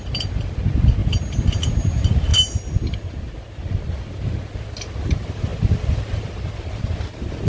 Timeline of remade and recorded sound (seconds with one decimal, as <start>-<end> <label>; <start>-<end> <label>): 0.0-7.5 recorded